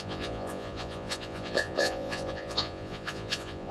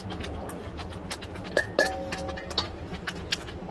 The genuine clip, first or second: second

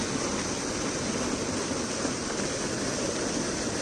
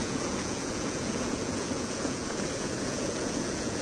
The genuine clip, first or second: first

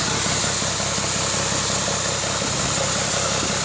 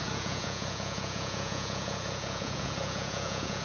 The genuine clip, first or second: first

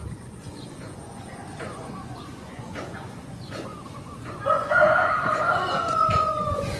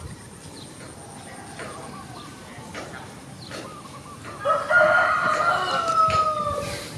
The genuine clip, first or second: second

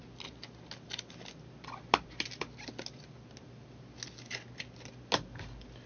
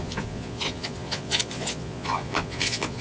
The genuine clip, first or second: first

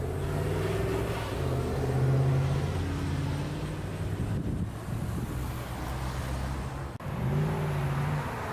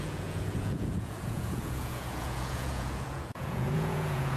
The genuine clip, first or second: first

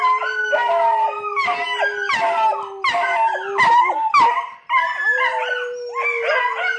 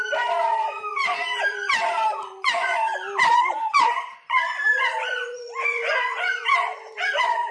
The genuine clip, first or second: first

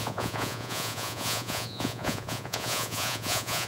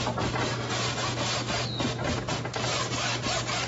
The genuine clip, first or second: second